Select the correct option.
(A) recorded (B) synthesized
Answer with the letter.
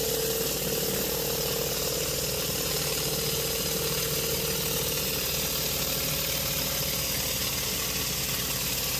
A